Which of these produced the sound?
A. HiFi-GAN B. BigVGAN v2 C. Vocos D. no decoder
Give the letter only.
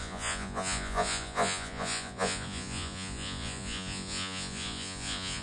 C